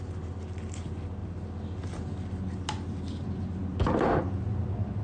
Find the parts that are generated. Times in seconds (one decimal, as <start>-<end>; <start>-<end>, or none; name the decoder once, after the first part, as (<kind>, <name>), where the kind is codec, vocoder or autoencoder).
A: none